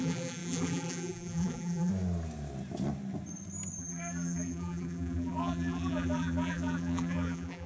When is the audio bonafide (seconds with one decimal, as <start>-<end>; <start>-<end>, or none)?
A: 1.9-3.8